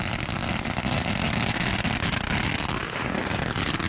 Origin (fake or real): real